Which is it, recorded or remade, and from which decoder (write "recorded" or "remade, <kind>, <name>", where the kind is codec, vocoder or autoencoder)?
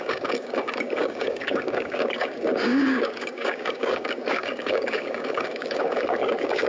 remade, codec, DAC